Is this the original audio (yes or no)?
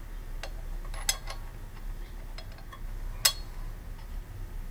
yes